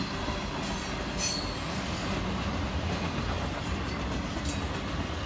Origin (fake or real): real